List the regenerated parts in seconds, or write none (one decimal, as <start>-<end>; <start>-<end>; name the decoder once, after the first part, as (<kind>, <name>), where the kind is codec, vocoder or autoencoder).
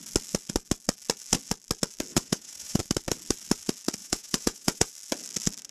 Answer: 2.1-2.8 (vocoder, Vocos); 4.0-4.9